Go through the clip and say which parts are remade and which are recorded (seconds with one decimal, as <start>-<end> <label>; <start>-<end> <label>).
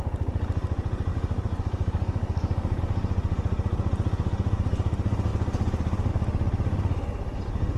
0.0-1.1 recorded; 1.1-2.8 remade; 2.8-7.8 recorded